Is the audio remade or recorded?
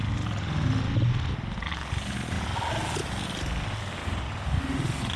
recorded